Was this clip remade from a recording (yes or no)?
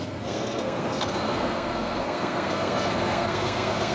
yes